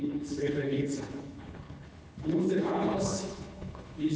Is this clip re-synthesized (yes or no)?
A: yes